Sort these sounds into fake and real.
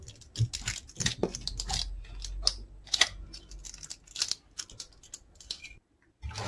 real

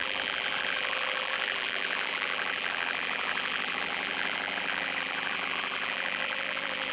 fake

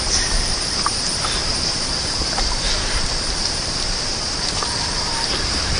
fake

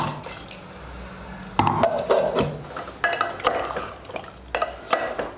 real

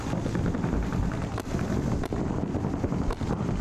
real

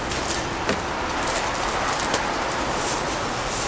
fake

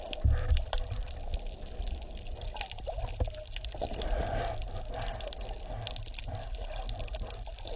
real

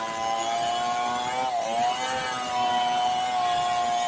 real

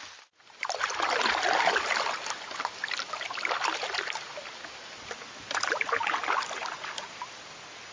real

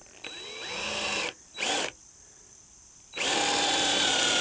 fake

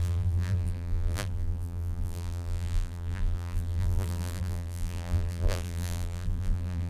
fake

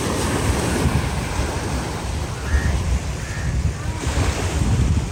real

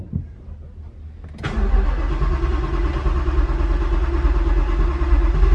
real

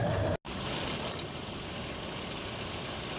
real